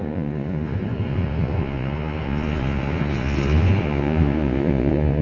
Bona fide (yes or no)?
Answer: no